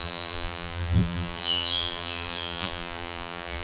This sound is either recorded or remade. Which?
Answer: remade